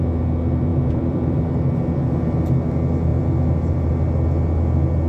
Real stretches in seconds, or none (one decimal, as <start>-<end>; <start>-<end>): 0.0-0.7; 1.4-3.1; 3.9-5.1